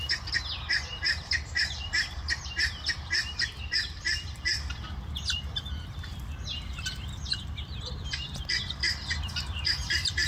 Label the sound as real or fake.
fake